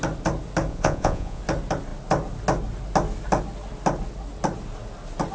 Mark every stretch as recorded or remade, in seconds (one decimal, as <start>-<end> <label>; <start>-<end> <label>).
0.0-0.7 recorded; 0.7-1.4 remade; 1.4-5.3 recorded